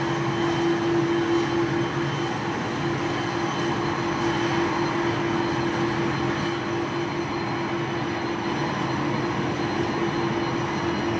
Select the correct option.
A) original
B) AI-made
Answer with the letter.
A